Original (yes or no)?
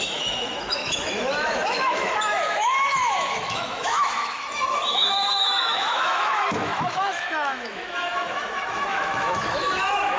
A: no